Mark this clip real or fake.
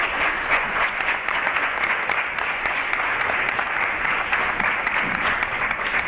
fake